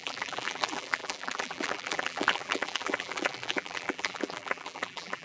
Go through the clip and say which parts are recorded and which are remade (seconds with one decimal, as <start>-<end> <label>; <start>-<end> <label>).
0.0-5.2 remade